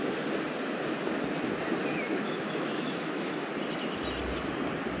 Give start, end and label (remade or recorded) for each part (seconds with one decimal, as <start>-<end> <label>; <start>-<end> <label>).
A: 0.0-2.1 recorded; 2.1-3.5 remade; 3.5-5.0 recorded